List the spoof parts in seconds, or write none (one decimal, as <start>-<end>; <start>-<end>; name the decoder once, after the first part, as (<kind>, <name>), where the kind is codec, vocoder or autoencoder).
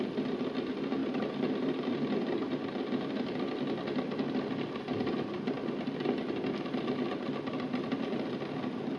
none